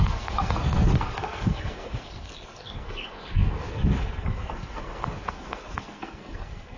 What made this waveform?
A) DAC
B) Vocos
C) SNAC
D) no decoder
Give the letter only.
C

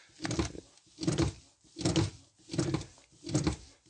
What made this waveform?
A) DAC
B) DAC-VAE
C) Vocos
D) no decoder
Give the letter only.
D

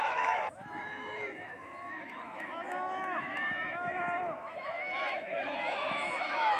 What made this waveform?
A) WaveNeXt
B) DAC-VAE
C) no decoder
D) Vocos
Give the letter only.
B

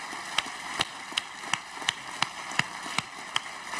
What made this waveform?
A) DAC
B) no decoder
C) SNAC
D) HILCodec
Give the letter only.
B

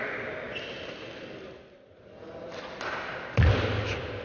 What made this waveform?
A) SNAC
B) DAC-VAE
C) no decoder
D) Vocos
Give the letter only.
C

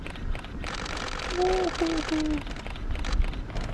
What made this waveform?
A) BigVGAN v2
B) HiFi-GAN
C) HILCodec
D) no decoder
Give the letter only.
D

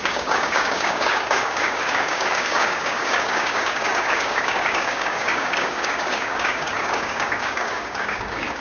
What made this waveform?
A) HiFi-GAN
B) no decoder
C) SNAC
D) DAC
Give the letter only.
D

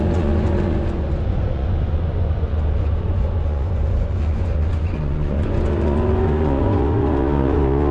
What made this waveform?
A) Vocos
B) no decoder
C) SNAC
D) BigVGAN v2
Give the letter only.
A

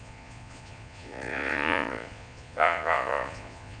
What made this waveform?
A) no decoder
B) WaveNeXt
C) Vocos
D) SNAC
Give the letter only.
C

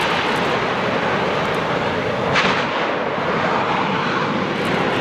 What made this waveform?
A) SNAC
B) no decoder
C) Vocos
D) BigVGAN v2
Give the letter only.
B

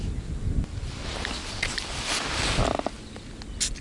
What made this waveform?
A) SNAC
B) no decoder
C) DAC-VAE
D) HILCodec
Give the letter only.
B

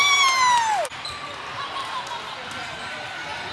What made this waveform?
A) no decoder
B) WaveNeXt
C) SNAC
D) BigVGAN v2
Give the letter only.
A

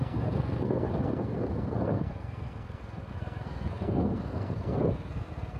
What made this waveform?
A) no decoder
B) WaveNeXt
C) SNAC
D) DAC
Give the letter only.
C